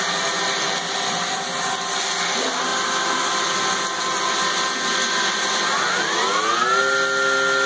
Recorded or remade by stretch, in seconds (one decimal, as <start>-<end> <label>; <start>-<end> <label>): 0.0-7.7 recorded